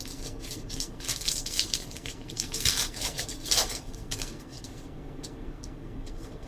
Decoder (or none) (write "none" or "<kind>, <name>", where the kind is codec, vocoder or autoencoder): codec, SNAC